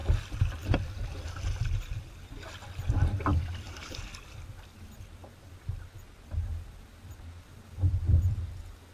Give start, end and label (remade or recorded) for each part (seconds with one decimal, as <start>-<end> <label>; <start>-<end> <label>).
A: 0.0-3.3 recorded; 3.3-4.0 remade; 4.0-8.9 recorded